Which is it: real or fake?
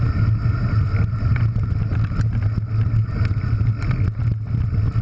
real